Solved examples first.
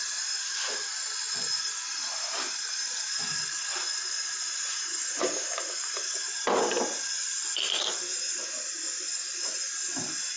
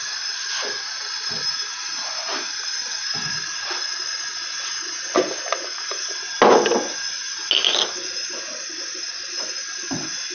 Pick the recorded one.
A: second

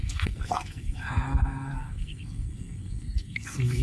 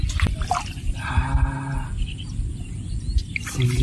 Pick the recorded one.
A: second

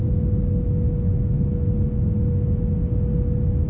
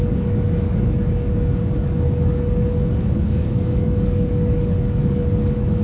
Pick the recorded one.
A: first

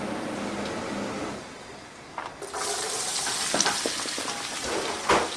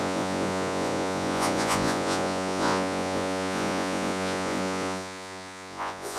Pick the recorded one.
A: first